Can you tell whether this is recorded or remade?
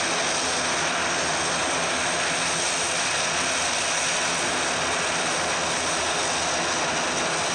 recorded